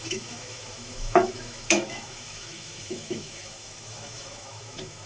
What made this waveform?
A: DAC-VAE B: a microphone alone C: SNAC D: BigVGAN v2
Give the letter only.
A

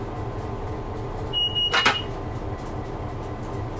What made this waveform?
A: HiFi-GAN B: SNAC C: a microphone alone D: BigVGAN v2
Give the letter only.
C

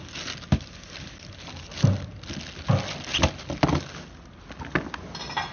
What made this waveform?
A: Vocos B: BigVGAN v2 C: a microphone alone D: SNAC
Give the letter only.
C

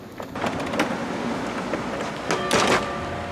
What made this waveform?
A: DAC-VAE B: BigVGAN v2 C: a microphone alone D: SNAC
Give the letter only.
C